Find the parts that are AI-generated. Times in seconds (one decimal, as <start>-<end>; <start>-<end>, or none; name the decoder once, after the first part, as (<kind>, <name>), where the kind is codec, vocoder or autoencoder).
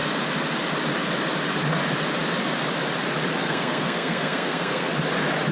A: 3.4-4.9 (codec, SNAC)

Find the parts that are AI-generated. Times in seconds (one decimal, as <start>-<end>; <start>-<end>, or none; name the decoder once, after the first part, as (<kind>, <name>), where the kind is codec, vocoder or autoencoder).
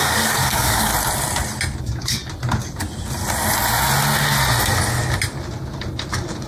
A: 0.0-0.9 (codec, DAC); 1.8-2.2; 6.1-6.5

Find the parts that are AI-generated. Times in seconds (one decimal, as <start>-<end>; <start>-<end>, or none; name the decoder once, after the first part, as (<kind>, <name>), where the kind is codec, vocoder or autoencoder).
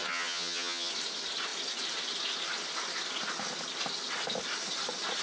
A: 0.0-0.9 (vocoder, HiFi-GAN)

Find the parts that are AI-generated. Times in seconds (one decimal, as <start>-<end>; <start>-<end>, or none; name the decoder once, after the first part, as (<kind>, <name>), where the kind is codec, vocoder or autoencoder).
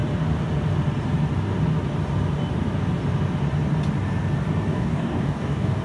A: 4.7-5.8 (codec, DAC)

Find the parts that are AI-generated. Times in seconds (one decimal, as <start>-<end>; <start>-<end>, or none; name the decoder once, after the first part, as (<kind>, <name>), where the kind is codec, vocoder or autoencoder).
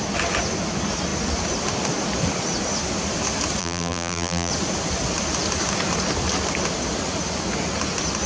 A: 3.6-4.5 (vocoder, BigVGAN v2)